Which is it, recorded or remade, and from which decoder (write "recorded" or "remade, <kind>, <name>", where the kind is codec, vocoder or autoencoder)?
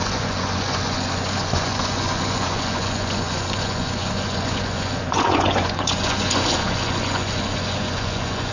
remade, vocoder, Vocos